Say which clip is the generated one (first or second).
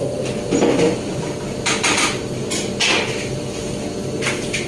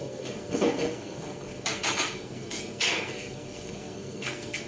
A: second